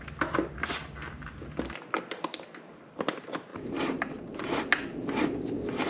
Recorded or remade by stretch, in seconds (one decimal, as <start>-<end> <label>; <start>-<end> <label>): 0.0-3.5 recorded; 3.5-4.2 remade; 4.2-5.9 recorded